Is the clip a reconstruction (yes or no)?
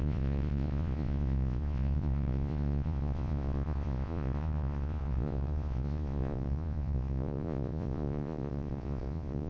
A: yes